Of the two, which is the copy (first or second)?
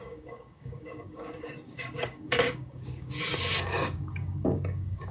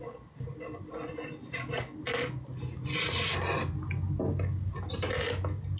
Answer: first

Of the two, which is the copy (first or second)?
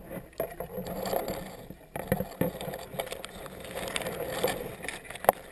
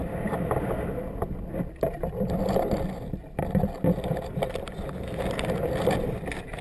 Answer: second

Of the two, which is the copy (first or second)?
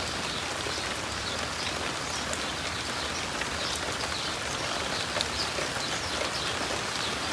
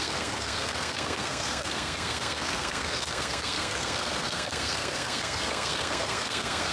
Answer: second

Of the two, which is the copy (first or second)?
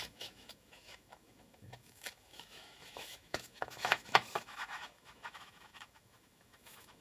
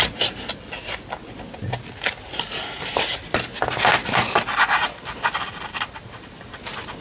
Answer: first